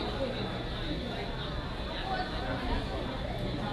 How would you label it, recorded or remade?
recorded